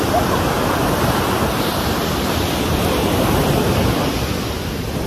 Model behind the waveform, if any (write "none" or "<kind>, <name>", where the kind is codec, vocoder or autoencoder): vocoder, BigVGAN v2